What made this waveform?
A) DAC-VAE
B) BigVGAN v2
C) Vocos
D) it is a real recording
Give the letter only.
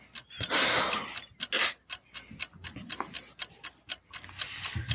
D